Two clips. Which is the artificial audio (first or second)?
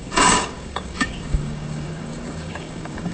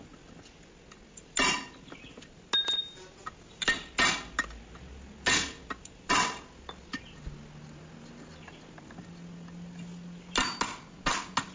first